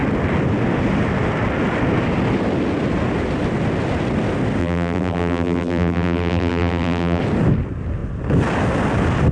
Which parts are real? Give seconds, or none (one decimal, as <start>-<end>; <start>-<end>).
0.0-4.6; 7.2-9.3